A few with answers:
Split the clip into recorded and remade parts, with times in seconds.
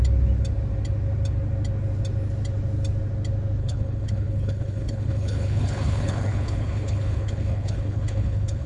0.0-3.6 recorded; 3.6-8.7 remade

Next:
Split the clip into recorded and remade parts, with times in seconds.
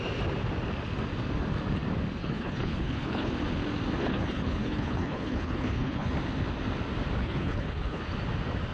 0.0-2.2 recorded; 2.2-3.3 remade; 3.3-4.0 recorded; 4.0-6.1 remade; 6.1-7.2 recorded; 7.2-8.0 remade; 8.0-8.7 recorded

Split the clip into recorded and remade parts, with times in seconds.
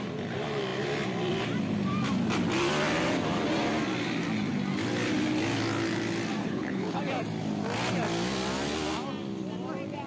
0.0-6.4 recorded; 6.4-7.0 remade; 7.0-10.1 recorded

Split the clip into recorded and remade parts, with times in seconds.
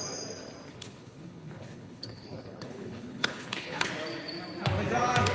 0.0-0.7 recorded; 0.7-3.9 remade; 3.9-5.3 recorded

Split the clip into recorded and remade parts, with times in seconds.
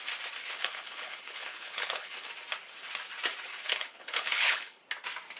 0.0-0.4 recorded; 0.4-2.3 remade; 2.3-3.5 recorded; 3.5-4.8 remade; 4.8-5.4 recorded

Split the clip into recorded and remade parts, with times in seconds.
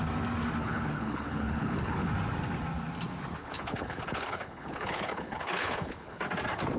0.0-0.6 recorded; 0.6-2.1 remade; 2.1-3.4 recorded; 3.4-6.2 remade; 6.2-6.8 recorded